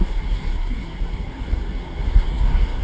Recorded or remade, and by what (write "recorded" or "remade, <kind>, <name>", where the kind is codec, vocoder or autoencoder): remade, codec, SNAC